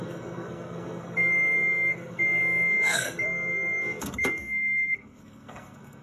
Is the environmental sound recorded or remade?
remade